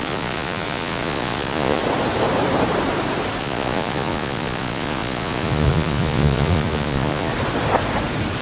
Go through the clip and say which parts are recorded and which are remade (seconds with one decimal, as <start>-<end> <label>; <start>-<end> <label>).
0.0-1.8 remade; 1.8-3.4 recorded; 3.4-7.3 remade; 7.3-8.4 recorded